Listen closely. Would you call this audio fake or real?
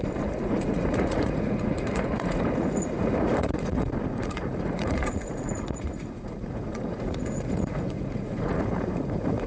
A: fake